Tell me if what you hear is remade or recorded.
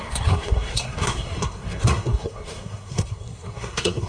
remade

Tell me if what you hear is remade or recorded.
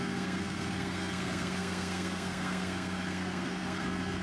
remade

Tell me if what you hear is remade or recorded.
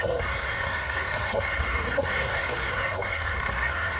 remade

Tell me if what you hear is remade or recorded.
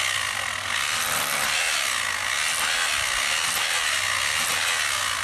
recorded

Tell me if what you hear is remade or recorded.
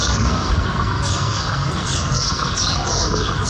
remade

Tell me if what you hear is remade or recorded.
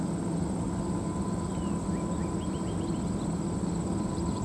recorded